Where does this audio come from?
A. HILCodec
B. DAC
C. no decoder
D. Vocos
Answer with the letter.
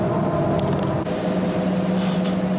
C